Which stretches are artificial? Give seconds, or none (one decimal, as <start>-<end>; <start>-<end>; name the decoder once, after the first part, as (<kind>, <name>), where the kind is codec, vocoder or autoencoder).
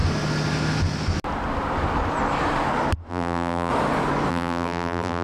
3.1-3.7 (vocoder, BigVGAN v2); 4.3-5.2